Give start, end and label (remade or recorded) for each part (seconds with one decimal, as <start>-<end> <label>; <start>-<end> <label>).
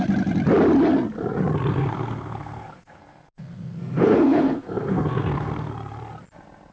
0.0-1.7 recorded; 1.7-5.7 remade; 5.7-6.7 recorded